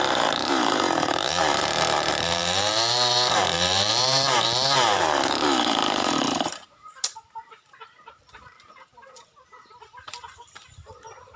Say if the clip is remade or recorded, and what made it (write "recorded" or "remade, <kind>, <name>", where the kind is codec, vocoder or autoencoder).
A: remade, vocoder, BigVGAN v2